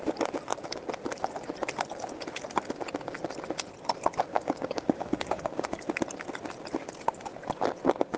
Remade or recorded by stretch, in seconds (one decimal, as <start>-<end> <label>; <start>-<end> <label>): 0.0-4.3 recorded; 4.3-5.8 remade; 5.8-8.2 recorded